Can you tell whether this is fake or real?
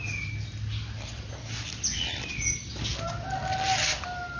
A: real